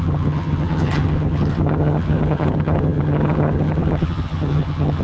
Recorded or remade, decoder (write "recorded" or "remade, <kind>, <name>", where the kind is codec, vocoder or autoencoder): remade, vocoder, HiFi-GAN